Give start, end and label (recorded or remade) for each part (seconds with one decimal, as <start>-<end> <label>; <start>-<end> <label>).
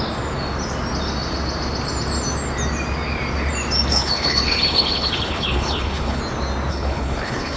0.0-3.9 recorded; 3.9-6.2 remade; 6.2-6.7 recorded; 6.7-7.6 remade